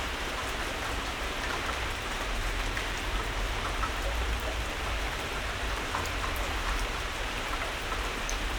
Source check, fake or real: fake